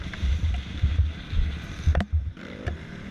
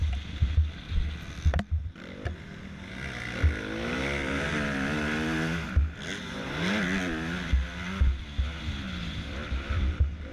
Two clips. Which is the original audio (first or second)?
second